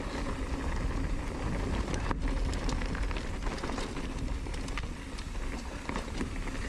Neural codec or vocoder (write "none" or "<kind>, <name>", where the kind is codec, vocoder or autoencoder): none